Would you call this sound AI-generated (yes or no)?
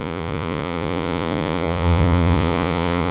yes